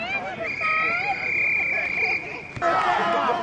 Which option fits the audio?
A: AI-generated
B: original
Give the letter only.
B